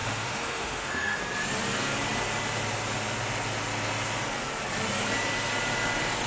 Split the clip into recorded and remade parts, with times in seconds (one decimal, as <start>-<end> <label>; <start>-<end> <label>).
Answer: 0.0-1.2 remade; 1.2-6.3 recorded